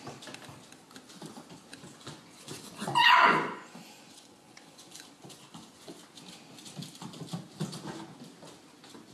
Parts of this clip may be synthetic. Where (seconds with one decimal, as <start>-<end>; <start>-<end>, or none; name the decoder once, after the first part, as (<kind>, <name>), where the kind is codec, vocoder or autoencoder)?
1.7-5.9 (vocoder, Vocos)